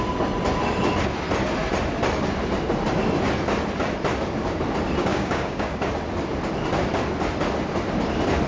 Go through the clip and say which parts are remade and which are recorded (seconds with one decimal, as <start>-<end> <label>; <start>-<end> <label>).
0.0-5.1 recorded; 5.1-5.9 remade; 5.9-8.5 recorded